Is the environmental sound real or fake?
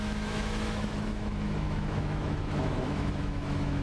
fake